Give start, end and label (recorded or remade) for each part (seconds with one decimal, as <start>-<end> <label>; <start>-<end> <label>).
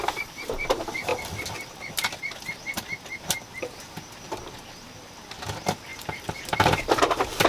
0.0-5.9 recorded; 5.9-7.5 remade